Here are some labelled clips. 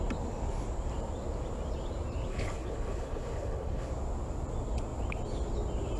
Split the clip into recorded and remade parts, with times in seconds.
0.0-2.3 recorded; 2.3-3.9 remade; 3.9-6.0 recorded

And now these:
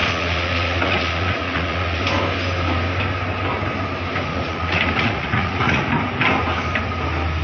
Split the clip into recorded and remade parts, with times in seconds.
0.0-2.0 remade; 2.0-4.3 recorded; 4.3-5.9 remade; 5.9-7.4 recorded

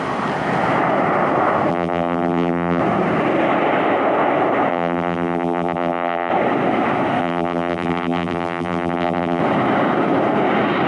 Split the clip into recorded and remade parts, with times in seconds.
0.0-1.7 recorded; 1.7-2.8 remade; 2.8-4.7 recorded; 4.7-6.3 remade; 6.3-7.2 recorded; 7.2-9.4 remade; 9.4-10.9 recorded